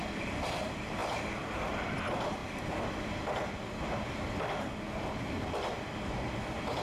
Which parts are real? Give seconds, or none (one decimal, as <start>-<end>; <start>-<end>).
0.0-1.0; 1.7-6.8